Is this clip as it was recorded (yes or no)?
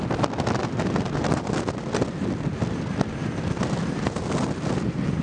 yes